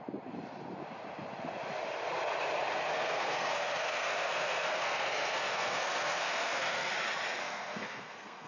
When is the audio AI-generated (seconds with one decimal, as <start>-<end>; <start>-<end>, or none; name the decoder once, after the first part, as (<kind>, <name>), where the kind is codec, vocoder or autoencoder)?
2.9-6.9 (codec, SNAC); 7.4-8.5